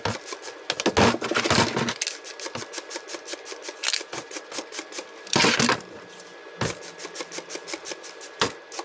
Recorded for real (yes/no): yes